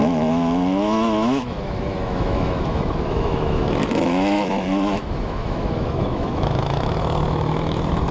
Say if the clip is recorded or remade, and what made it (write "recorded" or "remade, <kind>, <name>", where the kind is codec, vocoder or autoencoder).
remade, autoencoder, DAC-VAE